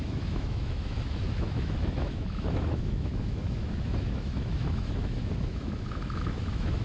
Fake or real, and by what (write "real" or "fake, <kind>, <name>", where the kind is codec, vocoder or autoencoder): fake, autoencoder, DAC-VAE